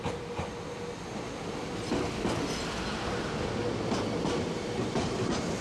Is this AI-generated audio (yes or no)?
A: no